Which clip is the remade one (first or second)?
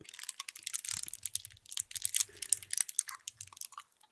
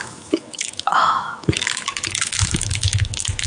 second